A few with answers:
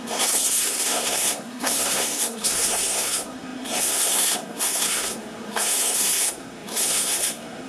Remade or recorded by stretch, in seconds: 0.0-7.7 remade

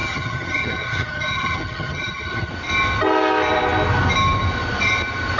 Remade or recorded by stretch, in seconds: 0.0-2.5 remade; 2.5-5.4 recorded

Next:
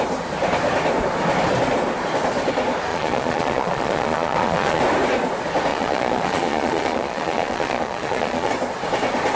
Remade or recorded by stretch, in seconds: 0.0-2.9 recorded; 2.9-4.8 remade; 4.8-5.7 recorded; 5.7-8.5 remade; 8.5-9.4 recorded

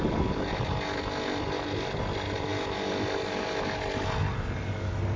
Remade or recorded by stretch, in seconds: 0.0-5.2 recorded

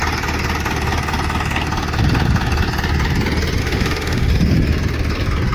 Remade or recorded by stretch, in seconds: 0.0-3.6 recorded; 3.6-4.3 remade; 4.3-5.5 recorded